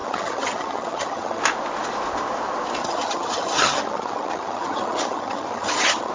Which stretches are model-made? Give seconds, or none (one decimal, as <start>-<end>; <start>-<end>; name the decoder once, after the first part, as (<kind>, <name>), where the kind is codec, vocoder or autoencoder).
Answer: 0.0-1.4 (vocoder, HiFi-GAN); 2.8-6.1